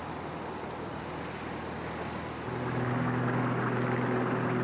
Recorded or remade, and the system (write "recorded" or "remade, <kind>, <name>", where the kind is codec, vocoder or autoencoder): recorded